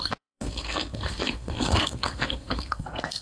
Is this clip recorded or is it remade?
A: remade